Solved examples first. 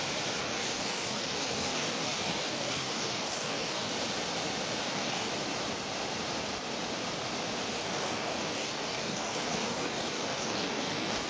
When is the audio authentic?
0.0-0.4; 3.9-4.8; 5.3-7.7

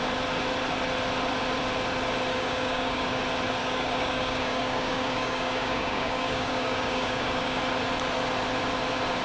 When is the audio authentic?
0.0-2.3; 3.2-3.6; 7.6-9.2

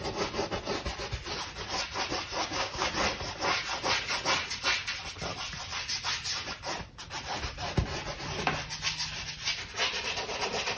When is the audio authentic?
0.0-2.4; 2.9-10.8

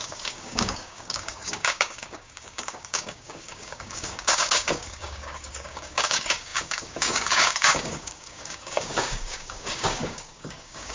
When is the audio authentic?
none

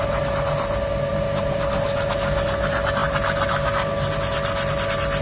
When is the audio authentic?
0.0-5.2